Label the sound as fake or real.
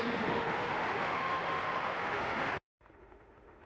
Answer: fake